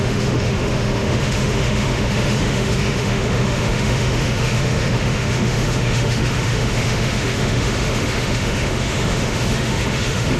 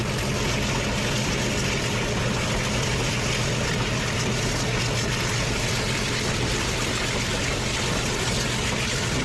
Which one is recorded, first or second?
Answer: second